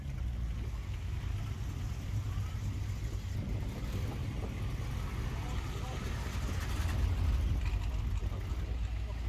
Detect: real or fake real